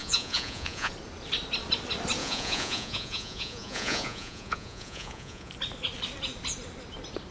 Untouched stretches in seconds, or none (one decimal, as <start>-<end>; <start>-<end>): 0.9-2.2; 5.5-7.3